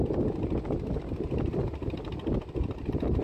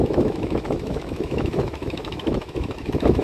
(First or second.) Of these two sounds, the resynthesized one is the second